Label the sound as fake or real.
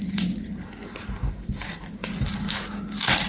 real